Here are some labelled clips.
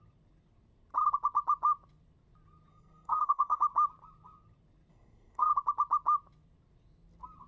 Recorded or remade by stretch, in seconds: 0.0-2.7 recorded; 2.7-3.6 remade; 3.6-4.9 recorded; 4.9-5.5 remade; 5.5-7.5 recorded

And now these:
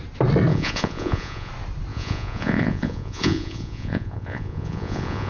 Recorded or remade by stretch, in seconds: 0.0-0.5 recorded; 0.5-1.5 remade; 1.5-1.9 recorded; 1.9-5.3 remade